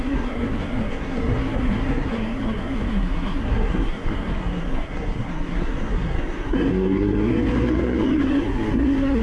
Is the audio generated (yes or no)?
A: yes